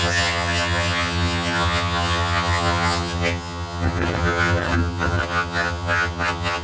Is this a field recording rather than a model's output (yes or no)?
no